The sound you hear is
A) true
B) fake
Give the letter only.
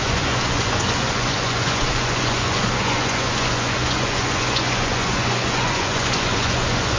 B